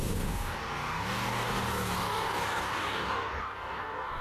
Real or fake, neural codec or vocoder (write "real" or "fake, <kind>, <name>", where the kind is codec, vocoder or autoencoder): fake, codec, DAC